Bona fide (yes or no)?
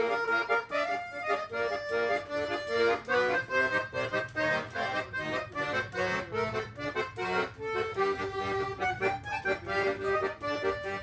yes